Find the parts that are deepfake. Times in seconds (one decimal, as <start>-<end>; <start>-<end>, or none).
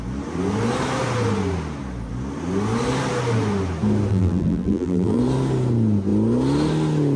4.1-5.2